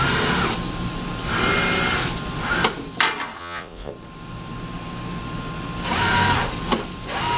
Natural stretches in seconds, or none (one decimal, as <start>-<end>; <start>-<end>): 0.0-3.4; 3.9-7.4